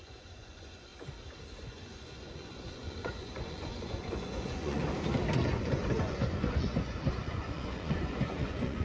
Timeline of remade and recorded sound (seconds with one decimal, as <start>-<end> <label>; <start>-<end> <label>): 0.0-0.9 remade; 0.9-1.6 recorded; 1.6-4.8 remade; 4.8-5.4 recorded; 5.4-8.8 remade